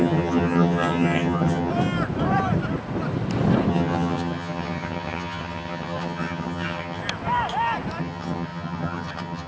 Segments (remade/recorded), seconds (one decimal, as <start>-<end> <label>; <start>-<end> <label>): 0.0-1.7 remade; 1.7-3.7 recorded; 3.7-7.0 remade; 7.0-8.0 recorded; 8.0-9.5 remade